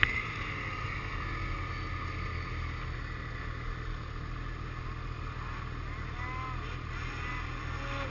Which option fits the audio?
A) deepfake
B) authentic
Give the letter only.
B